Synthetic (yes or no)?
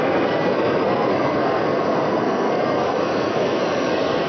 yes